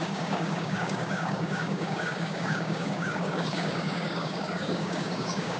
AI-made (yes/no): yes